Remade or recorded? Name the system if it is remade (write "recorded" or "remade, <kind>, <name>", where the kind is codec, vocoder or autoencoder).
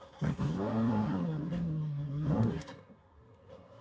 remade, codec, SNAC